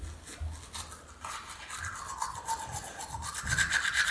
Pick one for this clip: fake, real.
real